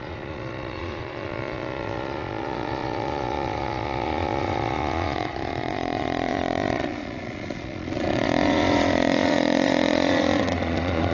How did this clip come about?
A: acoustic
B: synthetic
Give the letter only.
B